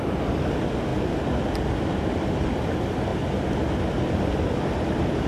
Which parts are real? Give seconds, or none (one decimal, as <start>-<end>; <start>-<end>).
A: 0.9-1.4; 3.1-4.3